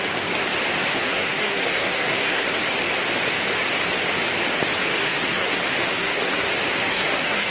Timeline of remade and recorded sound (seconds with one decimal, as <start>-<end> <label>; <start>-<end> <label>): 0.0-0.9 recorded; 0.9-2.5 remade; 2.5-5.0 recorded; 5.0-5.6 remade; 5.6-6.0 recorded; 6.0-6.5 remade; 6.5-6.9 recorded; 6.9-7.5 remade